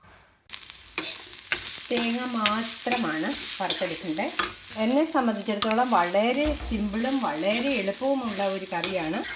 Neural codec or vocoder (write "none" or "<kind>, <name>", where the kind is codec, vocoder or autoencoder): none